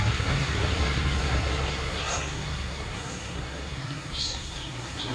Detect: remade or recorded remade